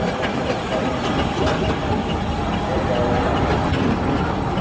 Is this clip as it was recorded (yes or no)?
yes